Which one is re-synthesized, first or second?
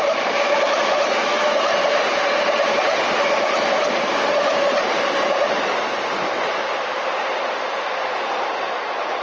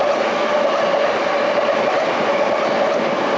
first